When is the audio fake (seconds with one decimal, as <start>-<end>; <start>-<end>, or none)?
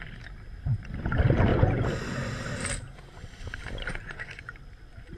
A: 1.5-2.3; 3.9-4.5